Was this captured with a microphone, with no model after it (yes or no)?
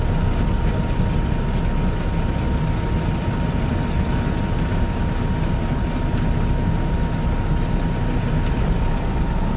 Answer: yes